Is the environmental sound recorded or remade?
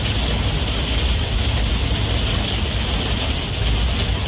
recorded